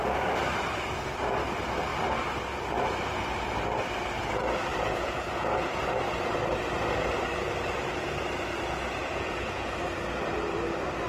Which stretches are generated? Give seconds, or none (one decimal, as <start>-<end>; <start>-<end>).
4.7-5.8; 9.0-9.7